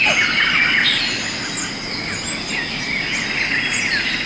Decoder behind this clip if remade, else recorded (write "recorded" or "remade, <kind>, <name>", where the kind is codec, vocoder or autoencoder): recorded